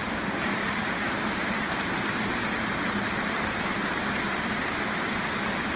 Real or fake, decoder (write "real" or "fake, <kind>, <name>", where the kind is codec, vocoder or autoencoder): real